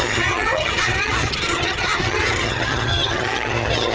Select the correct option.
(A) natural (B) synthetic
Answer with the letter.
B